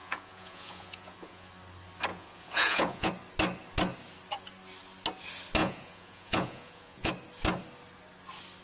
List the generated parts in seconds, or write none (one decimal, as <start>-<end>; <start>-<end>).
0.0-1.5; 2.1-3.1; 5.6-7.1